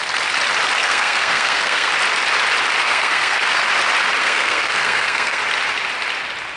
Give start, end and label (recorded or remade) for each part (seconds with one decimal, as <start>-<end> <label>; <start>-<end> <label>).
0.0-0.8 recorded; 0.8-1.9 remade; 1.9-2.8 recorded; 2.8-3.6 remade; 3.6-4.2 recorded; 4.2-5.4 remade; 5.4-6.6 recorded